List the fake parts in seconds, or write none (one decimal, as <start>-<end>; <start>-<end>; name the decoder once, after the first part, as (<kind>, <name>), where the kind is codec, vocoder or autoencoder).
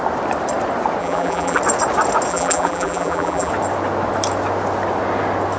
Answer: 1.0-1.6 (vocoder, BigVGAN v2); 2.3-3.5